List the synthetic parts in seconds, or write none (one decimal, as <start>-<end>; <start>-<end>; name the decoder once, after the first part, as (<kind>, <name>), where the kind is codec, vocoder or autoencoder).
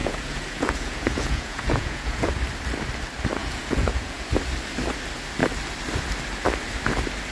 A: 0.0-2.3 (vocoder, Vocos); 3.4-4.3